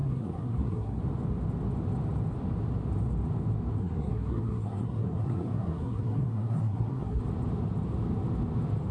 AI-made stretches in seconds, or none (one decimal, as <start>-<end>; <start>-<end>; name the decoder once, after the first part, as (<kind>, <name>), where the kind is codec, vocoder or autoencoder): 0.0-1.0 (codec, SNAC); 3.8-7.2